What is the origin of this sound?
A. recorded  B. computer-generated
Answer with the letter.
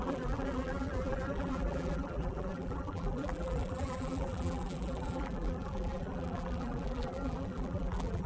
B